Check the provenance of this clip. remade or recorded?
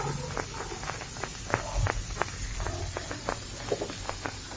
recorded